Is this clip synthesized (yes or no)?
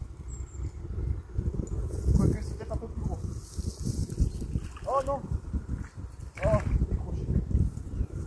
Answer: no